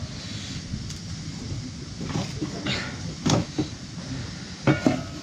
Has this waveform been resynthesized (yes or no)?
no